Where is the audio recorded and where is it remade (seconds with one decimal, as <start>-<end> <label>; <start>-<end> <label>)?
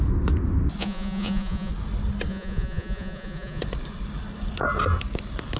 0.0-0.8 recorded; 0.8-1.7 remade; 1.7-2.3 recorded; 2.3-3.6 remade; 3.6-5.6 recorded